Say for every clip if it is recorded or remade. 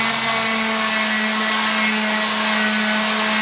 recorded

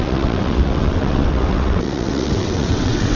remade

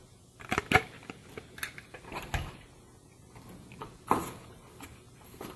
recorded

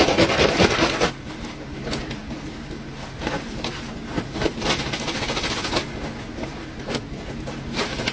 recorded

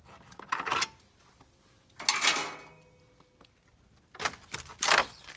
recorded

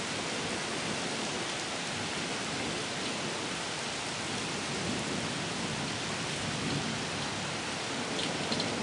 recorded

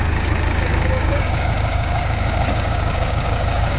remade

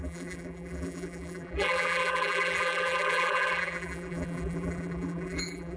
remade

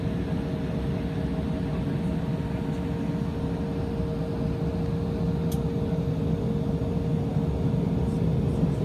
recorded